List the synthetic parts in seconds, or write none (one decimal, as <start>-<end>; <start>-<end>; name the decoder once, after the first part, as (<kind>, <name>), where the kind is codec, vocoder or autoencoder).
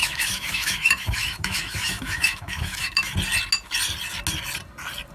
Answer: 0.0-3.1 (autoencoder, DAC-VAE)